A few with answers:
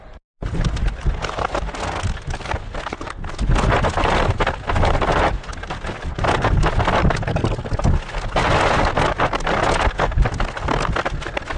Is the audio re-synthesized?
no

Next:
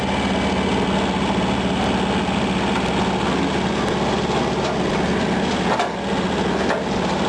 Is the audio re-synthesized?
no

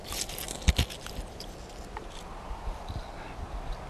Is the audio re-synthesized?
no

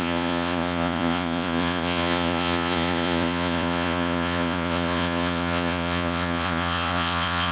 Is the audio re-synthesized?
yes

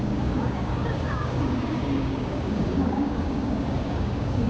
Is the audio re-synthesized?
yes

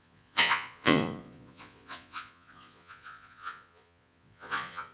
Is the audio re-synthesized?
yes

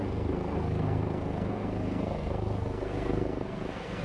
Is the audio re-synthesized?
yes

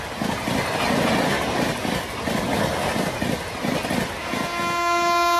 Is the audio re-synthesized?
no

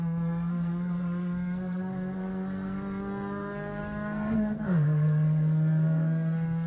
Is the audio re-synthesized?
yes